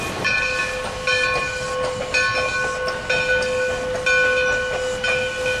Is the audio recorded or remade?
recorded